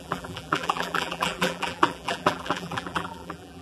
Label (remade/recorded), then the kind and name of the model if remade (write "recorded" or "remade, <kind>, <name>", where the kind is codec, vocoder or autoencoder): remade, vocoder, BigVGAN v2